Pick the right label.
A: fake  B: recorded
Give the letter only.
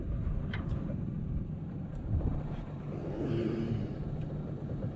A